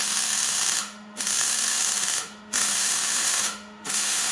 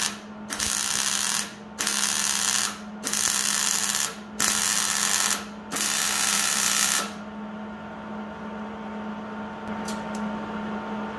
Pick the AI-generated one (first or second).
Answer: first